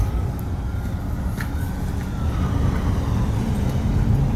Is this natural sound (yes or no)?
yes